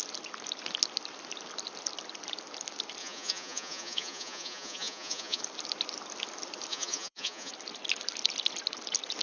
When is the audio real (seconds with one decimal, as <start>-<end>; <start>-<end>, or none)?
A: 0.0-3.0; 5.4-6.7; 7.5-9.2